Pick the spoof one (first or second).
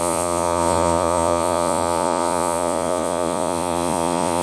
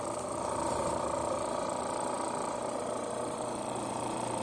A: first